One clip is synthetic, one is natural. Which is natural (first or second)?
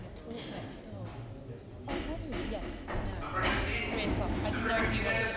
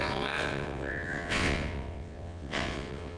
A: first